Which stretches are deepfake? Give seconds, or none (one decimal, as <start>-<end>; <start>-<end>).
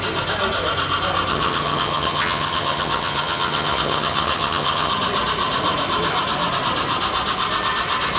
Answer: 1.3-4.9